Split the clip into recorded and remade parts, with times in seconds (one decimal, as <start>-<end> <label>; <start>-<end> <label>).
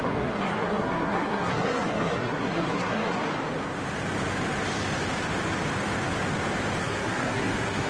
0.0-3.2 remade; 3.2-6.8 recorded; 6.8-7.9 remade